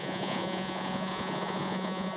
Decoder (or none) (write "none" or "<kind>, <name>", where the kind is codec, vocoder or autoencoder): vocoder, Vocos